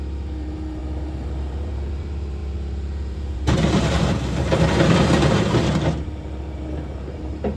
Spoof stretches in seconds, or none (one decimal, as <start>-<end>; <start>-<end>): 0.0-7.6